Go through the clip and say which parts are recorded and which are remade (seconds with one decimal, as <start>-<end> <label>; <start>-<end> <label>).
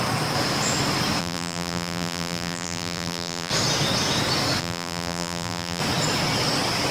0.0-1.2 recorded; 1.2-3.5 remade; 3.5-4.6 recorded; 4.6-5.8 remade; 5.8-6.9 recorded